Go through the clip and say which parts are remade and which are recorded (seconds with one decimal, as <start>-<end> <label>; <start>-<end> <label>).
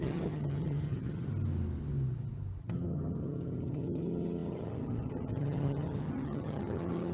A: 0.0-1.3 remade; 1.3-2.6 recorded; 2.6-7.1 remade